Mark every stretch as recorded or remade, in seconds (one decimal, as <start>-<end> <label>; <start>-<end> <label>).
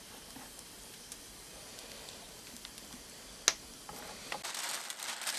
0.0-1.7 remade; 1.7-4.9 recorded; 4.9-5.4 remade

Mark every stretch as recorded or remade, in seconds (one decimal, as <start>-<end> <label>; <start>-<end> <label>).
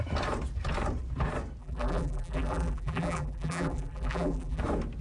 0.0-1.6 recorded; 1.6-4.6 remade; 4.6-5.0 recorded